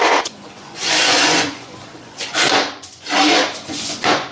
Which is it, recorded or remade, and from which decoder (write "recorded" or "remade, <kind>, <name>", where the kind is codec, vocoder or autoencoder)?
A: remade, vocoder, Vocos